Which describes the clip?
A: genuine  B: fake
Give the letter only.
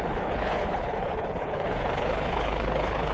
B